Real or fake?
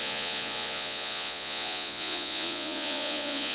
fake